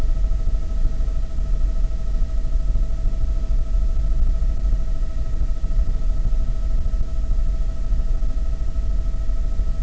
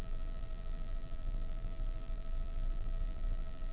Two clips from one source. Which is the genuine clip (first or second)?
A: first